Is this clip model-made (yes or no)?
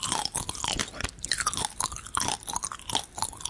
no